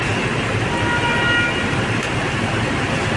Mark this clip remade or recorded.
recorded